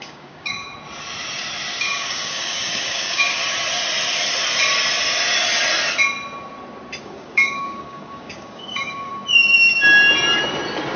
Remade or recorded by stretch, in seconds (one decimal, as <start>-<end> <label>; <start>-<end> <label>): 0.0-0.7 remade; 0.7-1.8 recorded; 1.8-3.4 remade; 3.4-7.0 recorded; 7.0-9.1 remade; 9.1-11.0 recorded